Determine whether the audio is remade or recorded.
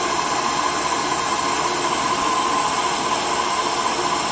recorded